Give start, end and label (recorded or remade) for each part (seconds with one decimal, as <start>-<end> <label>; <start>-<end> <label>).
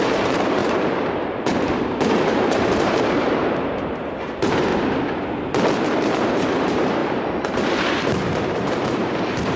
0.0-4.7 remade; 4.7-5.8 recorded; 5.8-9.6 remade